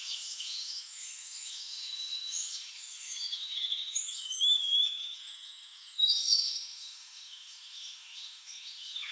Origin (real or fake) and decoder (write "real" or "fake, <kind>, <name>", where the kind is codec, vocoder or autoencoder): fake, autoencoder, DAC-VAE